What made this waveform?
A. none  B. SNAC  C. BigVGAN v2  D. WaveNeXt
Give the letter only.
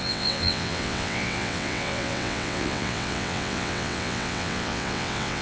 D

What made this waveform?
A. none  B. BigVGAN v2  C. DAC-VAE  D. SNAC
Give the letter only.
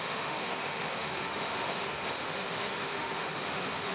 C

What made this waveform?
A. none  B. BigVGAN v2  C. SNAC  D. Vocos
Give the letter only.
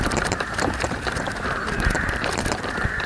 B